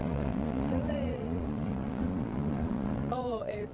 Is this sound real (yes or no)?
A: no